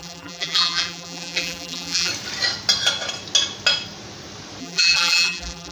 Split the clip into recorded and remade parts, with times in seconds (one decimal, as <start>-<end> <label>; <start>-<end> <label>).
0.0-2.1 remade; 2.1-4.6 recorded; 4.6-5.7 remade